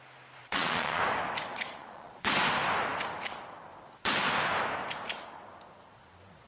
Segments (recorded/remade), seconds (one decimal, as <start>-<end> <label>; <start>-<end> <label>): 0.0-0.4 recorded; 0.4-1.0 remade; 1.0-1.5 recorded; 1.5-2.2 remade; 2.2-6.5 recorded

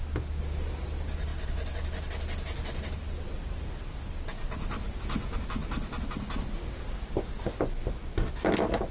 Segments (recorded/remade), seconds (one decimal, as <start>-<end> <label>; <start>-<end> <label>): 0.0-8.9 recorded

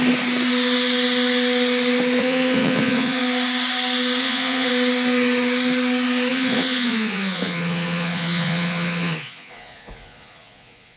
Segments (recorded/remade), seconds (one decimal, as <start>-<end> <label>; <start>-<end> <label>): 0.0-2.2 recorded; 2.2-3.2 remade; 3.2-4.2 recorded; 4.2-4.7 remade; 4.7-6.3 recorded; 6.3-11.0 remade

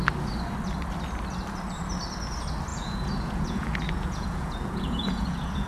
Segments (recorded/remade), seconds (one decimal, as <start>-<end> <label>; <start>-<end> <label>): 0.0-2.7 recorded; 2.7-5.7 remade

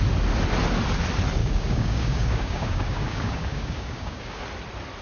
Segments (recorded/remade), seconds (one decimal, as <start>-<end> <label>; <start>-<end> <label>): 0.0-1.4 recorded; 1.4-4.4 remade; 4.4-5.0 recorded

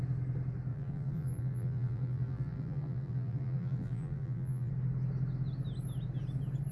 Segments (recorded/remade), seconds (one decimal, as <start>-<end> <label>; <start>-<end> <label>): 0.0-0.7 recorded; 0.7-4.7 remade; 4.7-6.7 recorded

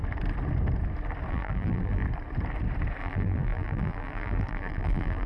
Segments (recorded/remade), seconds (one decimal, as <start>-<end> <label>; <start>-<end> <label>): 0.0-1.3 recorded; 1.3-2.0 remade; 2.0-3.0 recorded; 3.0-5.3 remade

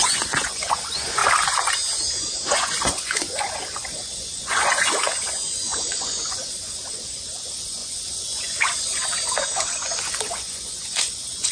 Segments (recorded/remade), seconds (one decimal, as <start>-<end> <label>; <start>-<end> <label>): 0.0-1.2 remade; 1.2-2.1 recorded; 2.1-11.5 remade